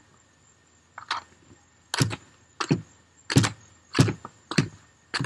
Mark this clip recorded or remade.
recorded